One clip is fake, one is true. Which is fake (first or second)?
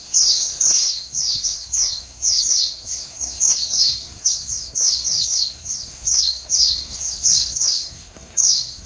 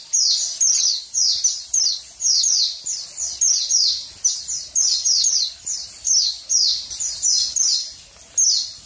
first